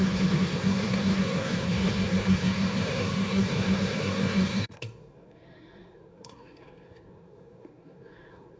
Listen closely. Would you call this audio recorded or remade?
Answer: remade